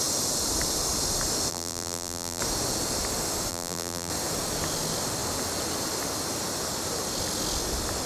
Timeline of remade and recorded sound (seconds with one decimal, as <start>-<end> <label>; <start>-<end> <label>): 0.0-1.5 recorded; 1.5-2.4 remade; 2.4-3.5 recorded; 3.5-4.1 remade; 4.1-8.1 recorded